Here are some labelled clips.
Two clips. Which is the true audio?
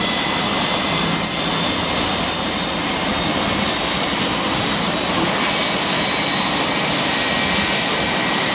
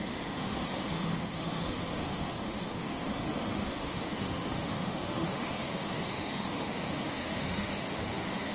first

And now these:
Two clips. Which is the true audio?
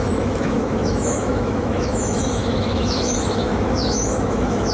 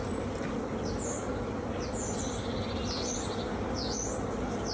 second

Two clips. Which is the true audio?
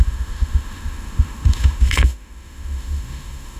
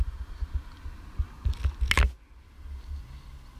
second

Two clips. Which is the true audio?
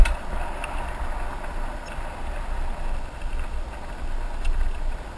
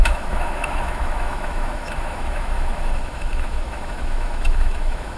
first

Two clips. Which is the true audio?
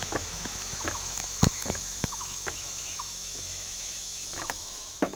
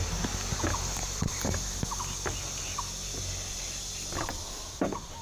second